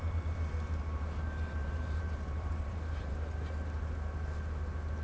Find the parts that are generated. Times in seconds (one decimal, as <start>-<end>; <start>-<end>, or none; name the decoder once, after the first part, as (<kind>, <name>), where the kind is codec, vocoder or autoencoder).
1.6-3.1 (vocoder, BigVGAN v2)